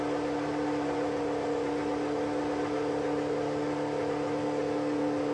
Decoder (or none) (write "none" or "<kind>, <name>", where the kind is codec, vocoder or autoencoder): none